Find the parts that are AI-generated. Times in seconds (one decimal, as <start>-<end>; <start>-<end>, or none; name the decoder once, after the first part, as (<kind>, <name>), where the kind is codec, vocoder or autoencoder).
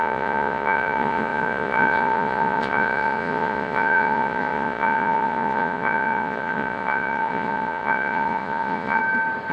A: 0.0-9.0 (vocoder, Vocos)